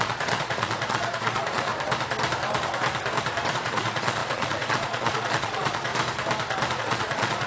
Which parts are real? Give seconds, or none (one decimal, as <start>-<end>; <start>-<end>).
1.7-3.5; 5.9-6.8